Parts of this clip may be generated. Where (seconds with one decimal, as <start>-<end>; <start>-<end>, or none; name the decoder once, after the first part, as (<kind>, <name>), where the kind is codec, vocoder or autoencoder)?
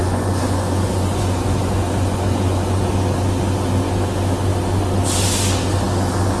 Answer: 0.0-2.9 (vocoder, Vocos)